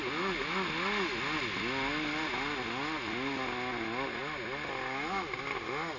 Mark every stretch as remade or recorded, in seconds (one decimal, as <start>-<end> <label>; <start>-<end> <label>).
0.0-6.0 recorded